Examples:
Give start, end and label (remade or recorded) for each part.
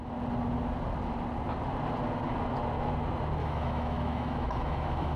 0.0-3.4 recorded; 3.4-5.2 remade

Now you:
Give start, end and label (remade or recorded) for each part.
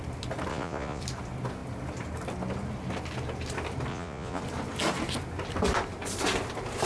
0.0-0.5 recorded; 0.5-1.0 remade; 1.0-3.9 recorded; 3.9-4.4 remade; 4.4-6.9 recorded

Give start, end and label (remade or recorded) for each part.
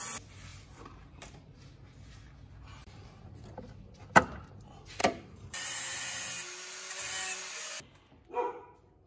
0.0-0.5 recorded; 0.5-1.6 remade; 1.6-2.8 recorded; 2.8-3.6 remade; 3.6-5.0 recorded; 5.0-6.0 remade; 6.0-9.1 recorded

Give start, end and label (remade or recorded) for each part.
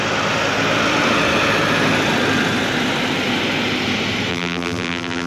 0.0-4.3 recorded; 4.3-5.3 remade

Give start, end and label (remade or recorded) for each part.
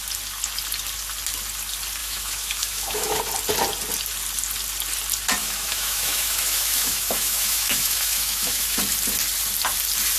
0.0-2.0 recorded; 2.0-3.2 remade; 3.2-5.4 recorded; 5.4-8.8 remade; 8.8-10.2 recorded